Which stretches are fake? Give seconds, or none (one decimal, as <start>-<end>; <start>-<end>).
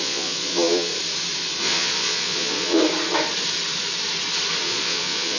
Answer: 0.0-0.9; 1.6-2.8; 4.6-5.4